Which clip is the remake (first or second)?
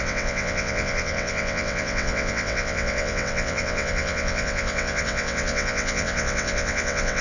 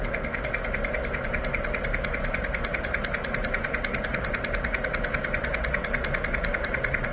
first